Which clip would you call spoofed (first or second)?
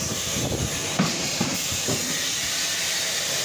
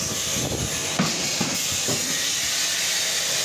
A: first